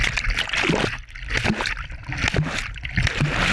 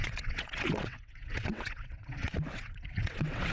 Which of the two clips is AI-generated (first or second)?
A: second